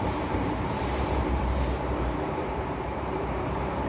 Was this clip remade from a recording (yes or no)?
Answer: yes